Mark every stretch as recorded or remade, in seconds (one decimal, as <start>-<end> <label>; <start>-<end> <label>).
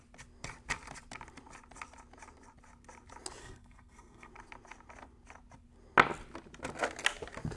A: 0.0-3.4 recorded; 3.4-4.3 remade; 4.3-7.6 recorded